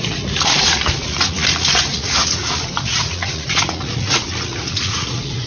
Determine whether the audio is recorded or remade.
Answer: remade